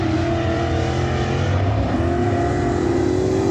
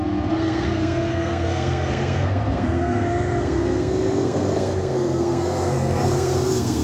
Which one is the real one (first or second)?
first